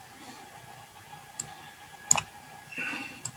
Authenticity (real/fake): real